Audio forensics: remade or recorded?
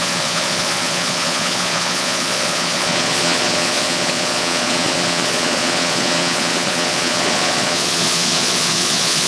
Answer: remade